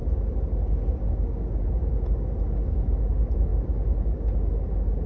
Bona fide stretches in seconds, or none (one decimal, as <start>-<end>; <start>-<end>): 0.0-5.1